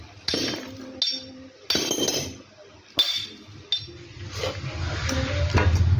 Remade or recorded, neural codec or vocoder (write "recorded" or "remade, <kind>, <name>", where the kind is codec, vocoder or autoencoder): recorded